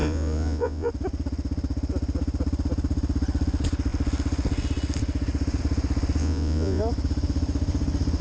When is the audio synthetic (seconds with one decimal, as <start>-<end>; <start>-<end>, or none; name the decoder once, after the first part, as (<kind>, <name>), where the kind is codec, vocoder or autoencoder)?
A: 0.0-0.9 (vocoder, Vocos); 6.2-6.8